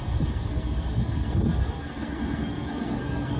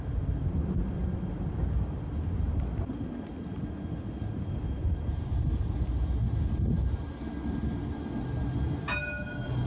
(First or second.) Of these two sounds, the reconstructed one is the first